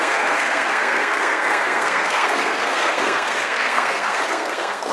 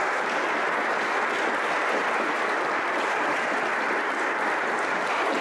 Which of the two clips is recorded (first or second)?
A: second